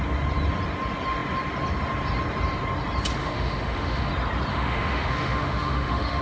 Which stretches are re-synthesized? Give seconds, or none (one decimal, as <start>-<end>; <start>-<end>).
3.2-4.1; 4.5-6.2